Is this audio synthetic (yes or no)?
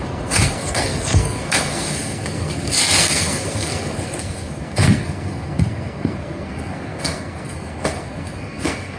yes